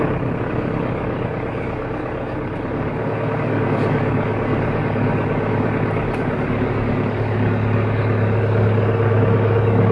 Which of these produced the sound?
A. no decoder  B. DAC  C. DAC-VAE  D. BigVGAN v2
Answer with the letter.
B